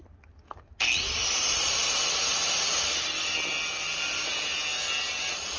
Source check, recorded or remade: recorded